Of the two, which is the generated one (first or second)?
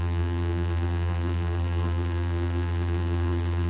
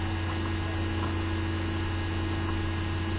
first